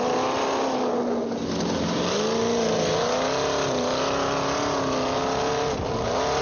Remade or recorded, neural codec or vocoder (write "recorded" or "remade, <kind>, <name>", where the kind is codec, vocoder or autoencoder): recorded